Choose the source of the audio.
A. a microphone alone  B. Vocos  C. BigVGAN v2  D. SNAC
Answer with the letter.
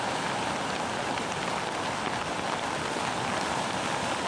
A